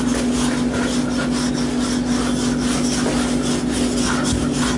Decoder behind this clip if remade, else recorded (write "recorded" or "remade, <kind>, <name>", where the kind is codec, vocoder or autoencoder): recorded